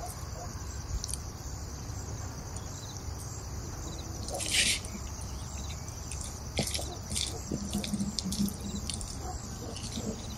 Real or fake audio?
fake